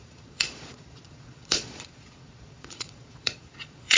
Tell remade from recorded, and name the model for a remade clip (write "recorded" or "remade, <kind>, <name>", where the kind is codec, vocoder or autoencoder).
remade, vocoder, Vocos